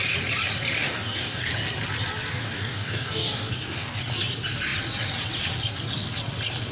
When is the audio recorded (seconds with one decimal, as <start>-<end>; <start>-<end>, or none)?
0.0-0.8; 1.5-2.3; 4.0-6.7